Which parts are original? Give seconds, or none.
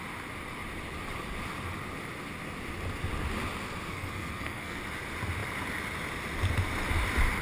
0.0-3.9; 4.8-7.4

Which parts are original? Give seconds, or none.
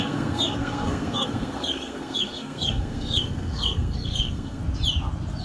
4.6-5.4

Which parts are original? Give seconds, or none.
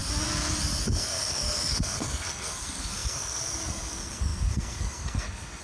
0.0-0.8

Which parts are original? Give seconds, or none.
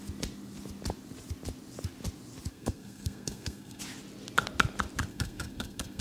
0.0-2.5; 3.8-5.1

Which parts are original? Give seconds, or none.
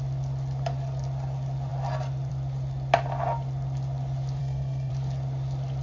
0.0-4.4; 4.9-5.8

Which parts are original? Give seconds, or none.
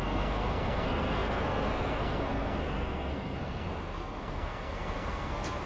none